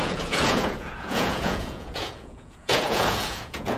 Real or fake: fake